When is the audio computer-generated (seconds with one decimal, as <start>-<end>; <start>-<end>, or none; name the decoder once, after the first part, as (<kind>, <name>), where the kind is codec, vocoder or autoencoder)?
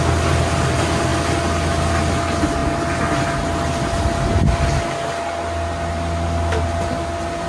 none